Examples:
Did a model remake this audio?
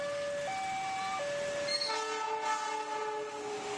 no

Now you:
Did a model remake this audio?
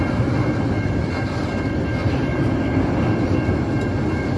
no